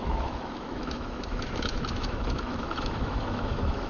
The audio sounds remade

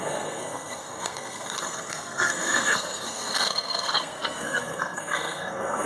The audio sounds remade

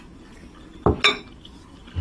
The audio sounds recorded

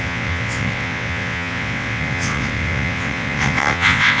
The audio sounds remade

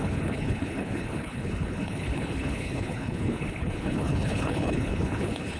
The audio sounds remade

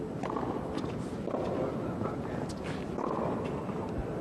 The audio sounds recorded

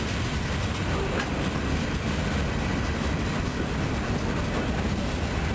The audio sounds recorded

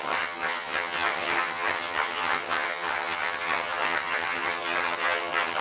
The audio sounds remade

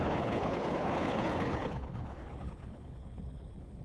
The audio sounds remade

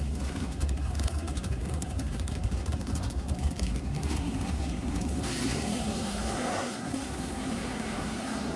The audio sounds remade